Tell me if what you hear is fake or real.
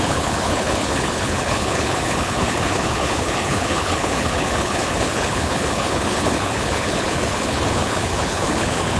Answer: fake